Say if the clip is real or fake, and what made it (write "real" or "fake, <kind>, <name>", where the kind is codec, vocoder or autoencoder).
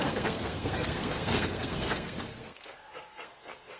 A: fake, codec, SNAC